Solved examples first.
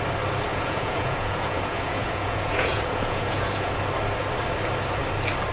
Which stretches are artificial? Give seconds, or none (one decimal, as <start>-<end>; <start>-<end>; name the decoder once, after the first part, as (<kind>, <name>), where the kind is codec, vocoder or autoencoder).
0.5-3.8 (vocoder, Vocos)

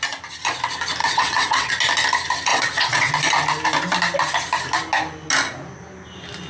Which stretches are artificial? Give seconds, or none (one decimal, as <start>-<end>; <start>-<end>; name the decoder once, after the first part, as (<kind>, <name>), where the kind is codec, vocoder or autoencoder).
1.0-1.7 (vocoder, WaveNeXt); 2.5-3.1

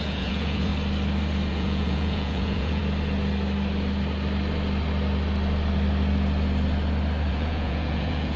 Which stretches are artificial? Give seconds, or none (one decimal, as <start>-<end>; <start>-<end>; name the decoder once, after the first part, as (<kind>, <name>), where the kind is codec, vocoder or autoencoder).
0.0-0.7 (vocoder, Vocos); 1.5-2.8; 7.3-8.4

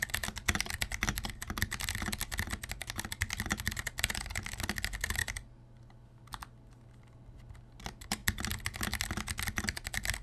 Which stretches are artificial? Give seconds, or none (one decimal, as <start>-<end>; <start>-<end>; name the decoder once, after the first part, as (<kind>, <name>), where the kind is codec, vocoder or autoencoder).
none

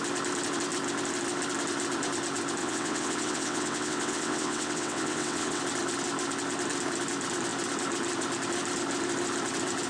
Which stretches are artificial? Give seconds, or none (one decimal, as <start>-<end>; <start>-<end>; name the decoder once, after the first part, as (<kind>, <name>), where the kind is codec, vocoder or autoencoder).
2.6-5.6 (vocoder, WaveNeXt)

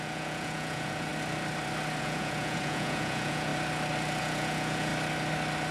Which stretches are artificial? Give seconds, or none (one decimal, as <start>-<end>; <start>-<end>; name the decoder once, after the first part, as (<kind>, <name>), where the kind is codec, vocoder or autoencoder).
0.0-1.1 (vocoder, Vocos); 2.0-3.5; 4.2-4.9